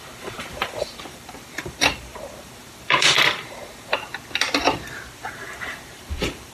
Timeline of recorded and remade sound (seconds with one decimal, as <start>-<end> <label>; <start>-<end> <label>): 0.0-4.1 remade; 4.1-5.1 recorded; 5.1-6.5 remade